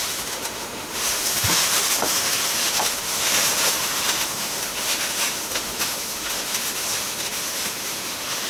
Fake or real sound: fake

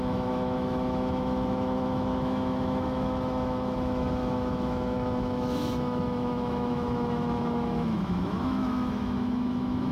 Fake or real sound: fake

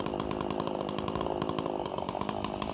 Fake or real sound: real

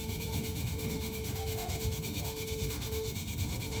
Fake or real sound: fake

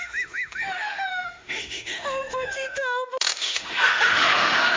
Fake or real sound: fake